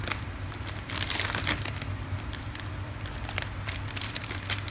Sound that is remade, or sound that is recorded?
recorded